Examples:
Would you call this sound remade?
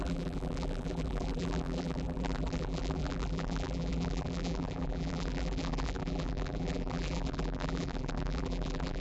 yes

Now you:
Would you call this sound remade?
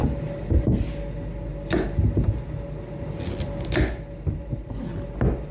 no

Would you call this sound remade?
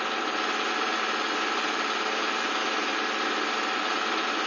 no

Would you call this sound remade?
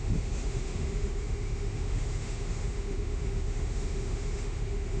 yes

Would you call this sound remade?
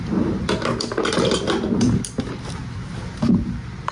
no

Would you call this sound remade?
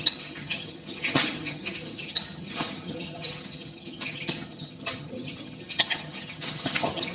yes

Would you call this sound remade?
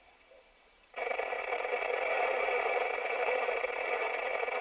yes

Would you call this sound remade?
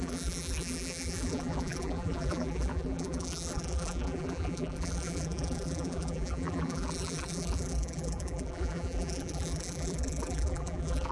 yes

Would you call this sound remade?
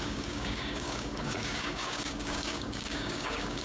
yes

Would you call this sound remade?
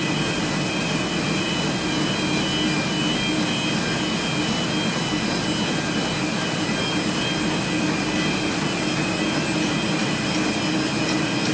no